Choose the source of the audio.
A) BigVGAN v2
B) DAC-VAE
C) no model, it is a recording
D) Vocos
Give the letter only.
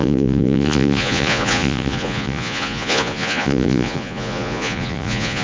D